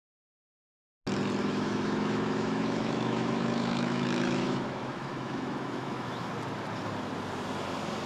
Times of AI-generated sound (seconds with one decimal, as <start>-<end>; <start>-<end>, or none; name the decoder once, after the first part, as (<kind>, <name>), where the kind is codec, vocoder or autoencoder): 1.4-6.3 (autoencoder, DAC-VAE)

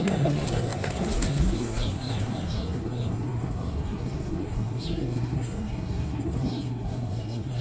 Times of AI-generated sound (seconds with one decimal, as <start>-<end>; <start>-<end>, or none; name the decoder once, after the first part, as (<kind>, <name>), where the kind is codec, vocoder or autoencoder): 0.0-7.6 (codec, SNAC)